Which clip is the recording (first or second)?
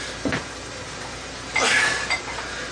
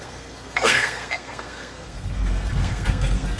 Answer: first